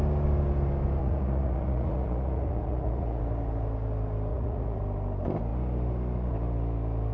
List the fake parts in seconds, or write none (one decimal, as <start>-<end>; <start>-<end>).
1.0-3.2; 4.3-4.8